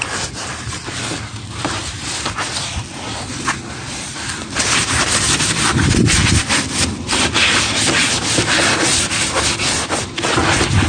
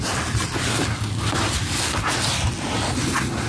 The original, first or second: second